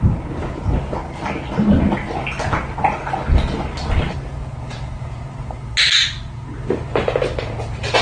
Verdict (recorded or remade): recorded